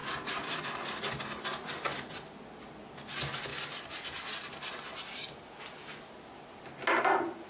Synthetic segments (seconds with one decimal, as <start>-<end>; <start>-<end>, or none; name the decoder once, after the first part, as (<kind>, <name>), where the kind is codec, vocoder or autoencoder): none